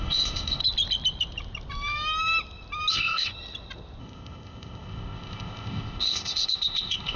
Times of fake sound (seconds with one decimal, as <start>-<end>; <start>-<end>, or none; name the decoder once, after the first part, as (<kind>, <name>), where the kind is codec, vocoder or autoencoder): 0.0-0.6 (codec, ZipCodec); 2.9-3.3; 4.0-7.2